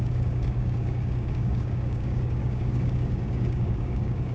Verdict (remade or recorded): remade